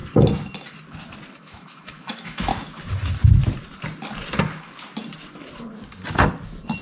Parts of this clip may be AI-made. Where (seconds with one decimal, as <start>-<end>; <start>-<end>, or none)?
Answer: 1.3-2.5

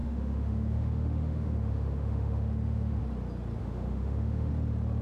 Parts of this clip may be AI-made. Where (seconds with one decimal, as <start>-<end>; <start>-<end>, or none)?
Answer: 0.0-3.0; 3.6-4.5

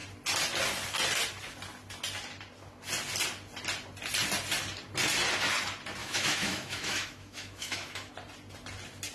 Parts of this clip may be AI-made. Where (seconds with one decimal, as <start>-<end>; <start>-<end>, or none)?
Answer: 6.0-8.1

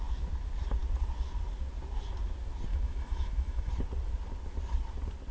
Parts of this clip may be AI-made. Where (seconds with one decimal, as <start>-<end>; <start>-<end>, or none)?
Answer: 2.7-3.7

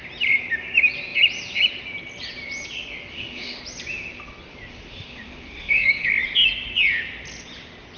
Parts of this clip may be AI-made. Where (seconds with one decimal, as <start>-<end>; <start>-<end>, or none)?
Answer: 3.1-3.6; 4.7-6.1

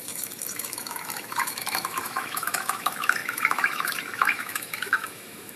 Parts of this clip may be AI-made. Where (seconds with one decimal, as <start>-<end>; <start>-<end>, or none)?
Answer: 0.0-5.6